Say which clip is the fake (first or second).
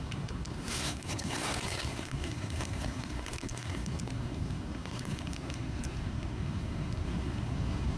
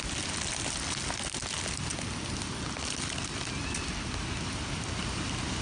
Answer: first